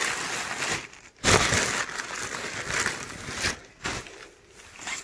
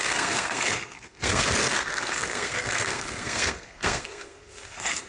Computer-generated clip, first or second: second